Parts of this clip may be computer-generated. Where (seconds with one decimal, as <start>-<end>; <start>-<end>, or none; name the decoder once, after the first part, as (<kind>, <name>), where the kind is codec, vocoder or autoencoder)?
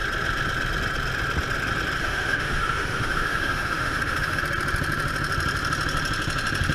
2.0-4.4 (autoencoder, DAC-VAE)